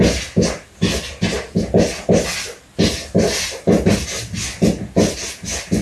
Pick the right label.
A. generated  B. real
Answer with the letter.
B